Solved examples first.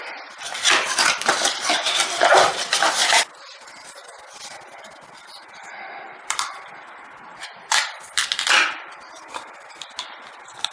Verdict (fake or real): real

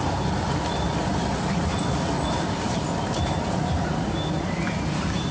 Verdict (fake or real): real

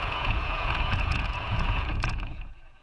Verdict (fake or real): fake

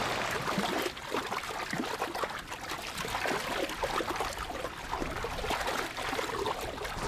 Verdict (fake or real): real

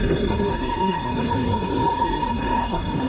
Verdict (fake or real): fake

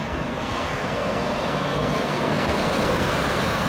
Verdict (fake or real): fake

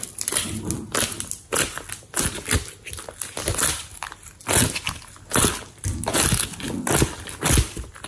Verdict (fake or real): real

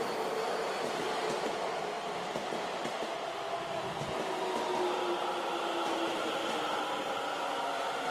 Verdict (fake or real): real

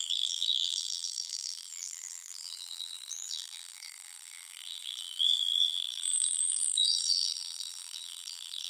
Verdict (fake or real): fake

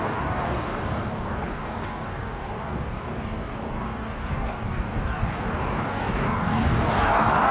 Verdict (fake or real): fake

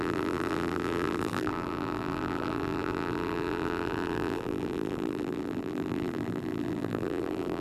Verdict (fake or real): fake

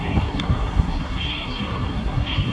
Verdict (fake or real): fake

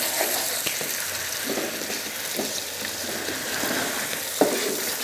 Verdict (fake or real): real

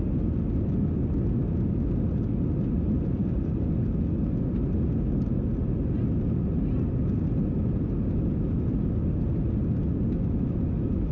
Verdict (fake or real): real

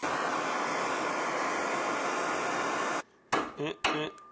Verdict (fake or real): real